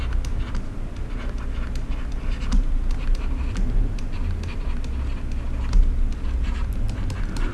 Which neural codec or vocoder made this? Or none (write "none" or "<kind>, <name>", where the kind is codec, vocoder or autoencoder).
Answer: none